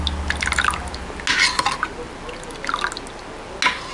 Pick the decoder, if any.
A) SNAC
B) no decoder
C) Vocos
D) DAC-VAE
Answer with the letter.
B